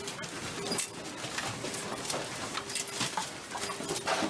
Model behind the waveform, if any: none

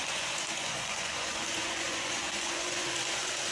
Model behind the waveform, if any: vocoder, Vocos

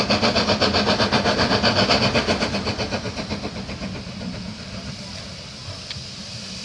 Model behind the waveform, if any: none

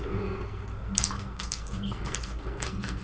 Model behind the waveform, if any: codec, SNAC